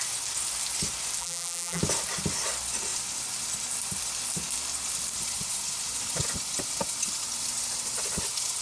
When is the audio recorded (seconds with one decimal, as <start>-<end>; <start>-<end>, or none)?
0.0-1.2; 1.8-8.6